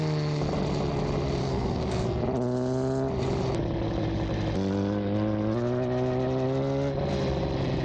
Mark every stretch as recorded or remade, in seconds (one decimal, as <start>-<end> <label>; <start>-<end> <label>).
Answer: 0.0-1.4 recorded; 1.4-2.2 remade; 2.2-7.8 recorded